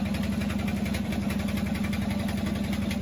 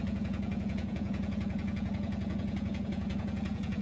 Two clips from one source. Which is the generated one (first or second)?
second